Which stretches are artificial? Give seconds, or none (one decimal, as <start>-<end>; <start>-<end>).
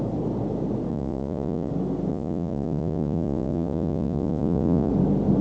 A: 0.9-1.7; 2.1-4.9